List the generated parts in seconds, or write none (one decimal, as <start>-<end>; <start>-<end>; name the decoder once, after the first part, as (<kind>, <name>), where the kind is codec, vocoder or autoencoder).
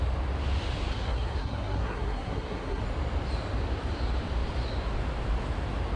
0.9-2.8 (codec, SNAC)